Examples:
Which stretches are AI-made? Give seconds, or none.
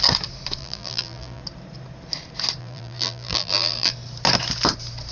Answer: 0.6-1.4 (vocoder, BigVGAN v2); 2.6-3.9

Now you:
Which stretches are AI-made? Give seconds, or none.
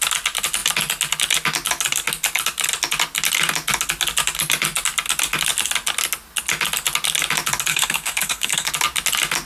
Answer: 7.7-8.7 (codec, SNAC)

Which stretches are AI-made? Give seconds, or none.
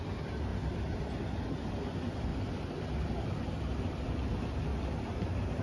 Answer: 0.5-1.0 (vocoder, BigVGAN v2); 2.3-4.3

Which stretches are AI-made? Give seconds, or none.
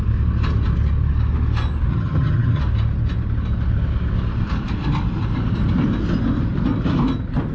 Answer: 1.9-2.6 (vocoder, HiFi-GAN)